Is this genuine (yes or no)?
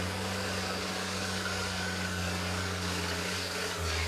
no